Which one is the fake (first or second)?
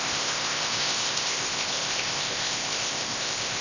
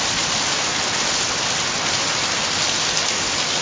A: first